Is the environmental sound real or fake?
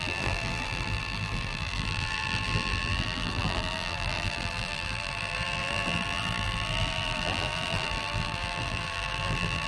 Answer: fake